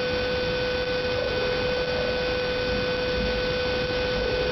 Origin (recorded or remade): recorded